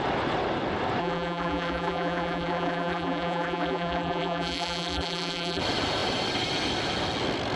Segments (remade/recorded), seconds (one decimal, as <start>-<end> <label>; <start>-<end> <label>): 0.0-1.0 recorded; 1.0-5.6 remade; 5.6-7.6 recorded